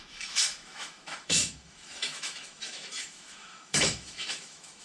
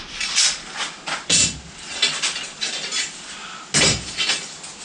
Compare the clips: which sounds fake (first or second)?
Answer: first